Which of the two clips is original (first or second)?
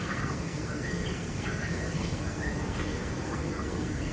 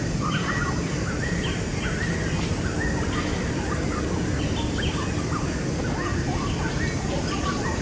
second